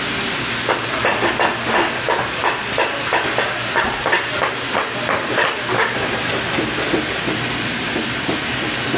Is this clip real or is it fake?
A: real